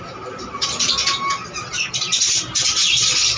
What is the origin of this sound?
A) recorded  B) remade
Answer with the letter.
A